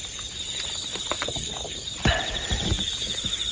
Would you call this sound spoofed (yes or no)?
no